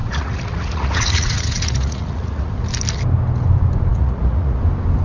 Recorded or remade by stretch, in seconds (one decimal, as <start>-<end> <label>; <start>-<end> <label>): 0.0-2.5 remade; 2.5-3.9 recorded; 3.9-4.6 remade; 4.6-5.0 recorded